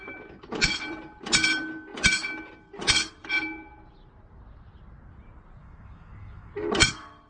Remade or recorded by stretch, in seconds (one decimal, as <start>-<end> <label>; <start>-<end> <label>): 0.0-5.6 recorded; 5.6-6.5 remade; 6.5-7.3 recorded